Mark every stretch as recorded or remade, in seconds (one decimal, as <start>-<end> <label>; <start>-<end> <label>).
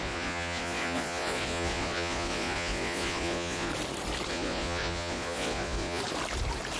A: 0.0-3.7 remade; 3.7-4.3 recorded; 4.3-6.0 remade; 6.0-6.8 recorded